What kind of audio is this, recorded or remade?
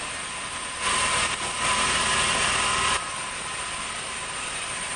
recorded